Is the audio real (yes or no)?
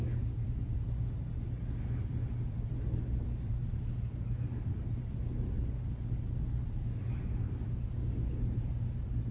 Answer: yes